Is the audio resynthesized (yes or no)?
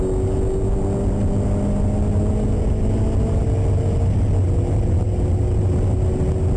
no